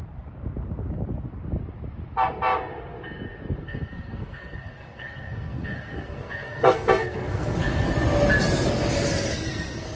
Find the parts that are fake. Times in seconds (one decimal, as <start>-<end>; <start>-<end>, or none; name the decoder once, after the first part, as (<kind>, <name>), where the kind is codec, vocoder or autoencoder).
3.6-8.0 (codec, SNAC); 9.3-10.0